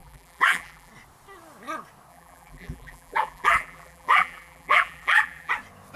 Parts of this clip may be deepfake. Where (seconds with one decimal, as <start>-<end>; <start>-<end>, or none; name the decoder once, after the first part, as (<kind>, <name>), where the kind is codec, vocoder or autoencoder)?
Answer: 0.0-0.9 (vocoder, BigVGAN v2); 2.1-5.5